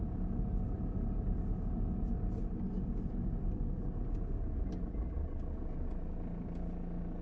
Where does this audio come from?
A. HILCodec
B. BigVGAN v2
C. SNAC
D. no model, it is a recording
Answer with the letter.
D